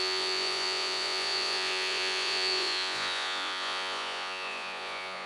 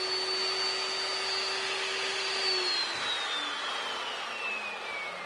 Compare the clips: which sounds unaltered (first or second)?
second